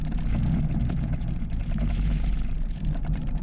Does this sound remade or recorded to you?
remade